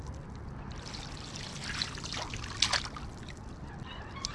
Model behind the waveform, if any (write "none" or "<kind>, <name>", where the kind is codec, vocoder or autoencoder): none